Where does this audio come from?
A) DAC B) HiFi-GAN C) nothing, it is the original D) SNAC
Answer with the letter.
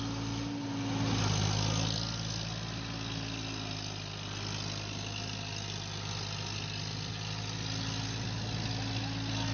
C